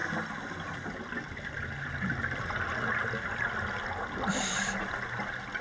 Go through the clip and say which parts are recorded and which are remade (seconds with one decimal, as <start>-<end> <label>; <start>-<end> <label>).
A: 0.0-5.6 recorded